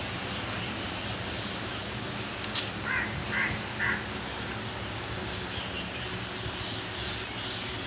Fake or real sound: real